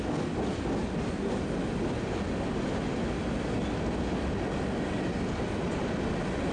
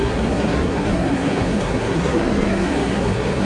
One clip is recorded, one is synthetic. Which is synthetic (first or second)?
second